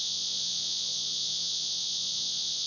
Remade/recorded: remade